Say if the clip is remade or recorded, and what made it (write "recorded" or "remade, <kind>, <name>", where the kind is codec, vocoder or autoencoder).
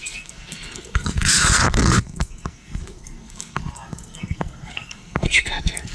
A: remade, codec, SNAC